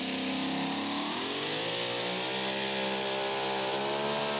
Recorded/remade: recorded